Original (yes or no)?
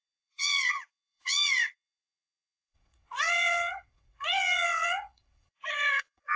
no